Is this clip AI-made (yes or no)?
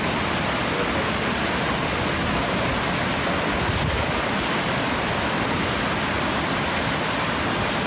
no